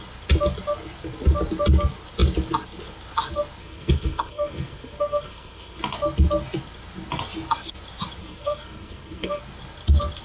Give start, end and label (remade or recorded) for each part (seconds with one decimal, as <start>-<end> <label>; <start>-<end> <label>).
0.0-3.6 recorded; 3.6-5.8 remade; 5.8-8.2 recorded; 8.2-9.4 remade; 9.4-10.2 recorded